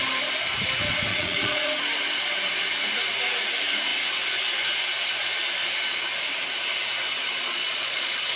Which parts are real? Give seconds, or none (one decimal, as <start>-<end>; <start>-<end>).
0.0-1.1; 1.8-7.2